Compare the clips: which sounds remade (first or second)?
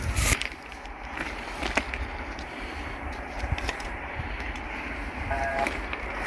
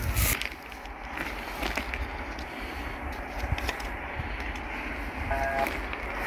first